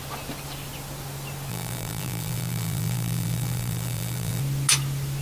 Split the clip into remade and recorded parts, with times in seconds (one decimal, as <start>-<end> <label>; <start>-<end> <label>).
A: 0.0-1.5 recorded; 1.5-4.4 remade; 4.4-5.2 recorded